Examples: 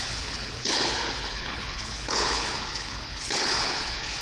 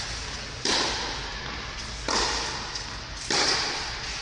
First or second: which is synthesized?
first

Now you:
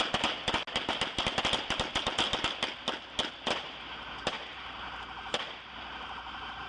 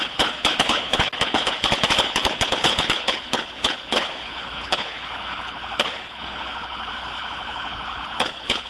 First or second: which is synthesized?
second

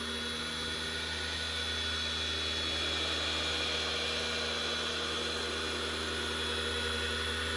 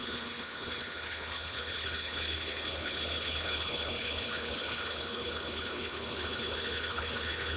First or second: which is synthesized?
second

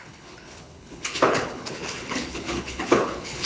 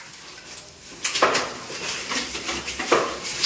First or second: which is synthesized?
first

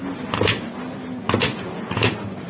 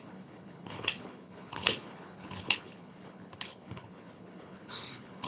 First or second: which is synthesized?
second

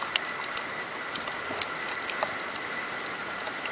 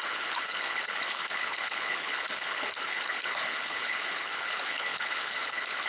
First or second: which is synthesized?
second